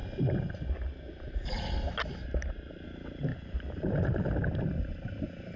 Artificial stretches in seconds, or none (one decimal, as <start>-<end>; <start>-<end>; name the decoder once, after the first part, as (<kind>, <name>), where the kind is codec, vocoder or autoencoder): none